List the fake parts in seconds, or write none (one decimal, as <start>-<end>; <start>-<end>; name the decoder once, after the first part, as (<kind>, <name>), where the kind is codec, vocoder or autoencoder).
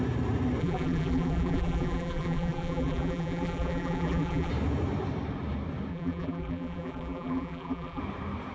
0.6-4.5 (vocoder, BigVGAN v2); 5.9-8.0